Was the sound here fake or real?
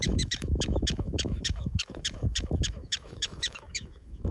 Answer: fake